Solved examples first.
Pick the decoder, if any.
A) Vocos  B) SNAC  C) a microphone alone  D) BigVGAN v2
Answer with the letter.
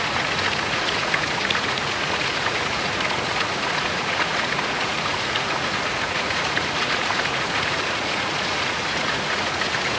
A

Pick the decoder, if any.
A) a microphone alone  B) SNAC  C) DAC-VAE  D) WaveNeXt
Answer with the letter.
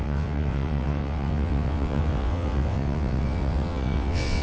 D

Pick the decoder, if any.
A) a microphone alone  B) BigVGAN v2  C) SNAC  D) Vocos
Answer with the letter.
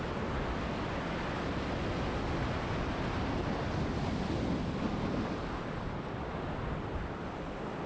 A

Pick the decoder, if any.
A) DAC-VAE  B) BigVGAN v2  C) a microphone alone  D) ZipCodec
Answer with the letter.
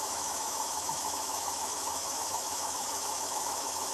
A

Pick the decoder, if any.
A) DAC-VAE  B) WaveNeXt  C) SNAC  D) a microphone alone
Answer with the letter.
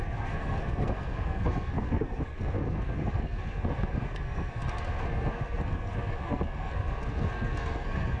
C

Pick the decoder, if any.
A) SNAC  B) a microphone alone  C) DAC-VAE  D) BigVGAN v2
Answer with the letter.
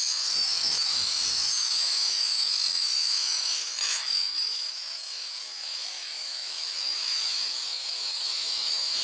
C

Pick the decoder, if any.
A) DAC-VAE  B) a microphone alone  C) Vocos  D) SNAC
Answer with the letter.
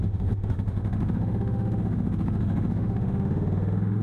A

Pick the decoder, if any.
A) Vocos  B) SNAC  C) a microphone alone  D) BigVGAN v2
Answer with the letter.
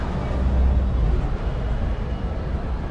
C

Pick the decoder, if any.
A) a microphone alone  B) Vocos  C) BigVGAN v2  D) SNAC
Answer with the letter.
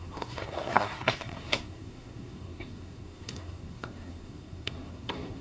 D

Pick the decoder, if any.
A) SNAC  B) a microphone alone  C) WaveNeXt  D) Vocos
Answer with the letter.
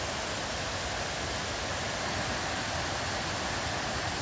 B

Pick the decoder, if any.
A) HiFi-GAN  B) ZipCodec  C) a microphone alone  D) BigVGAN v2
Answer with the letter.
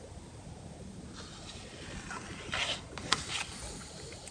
C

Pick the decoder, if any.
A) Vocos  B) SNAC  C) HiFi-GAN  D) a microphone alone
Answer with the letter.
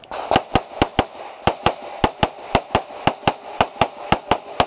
D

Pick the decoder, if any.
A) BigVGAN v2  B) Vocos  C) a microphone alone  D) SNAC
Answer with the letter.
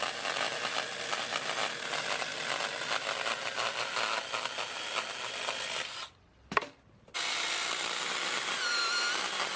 C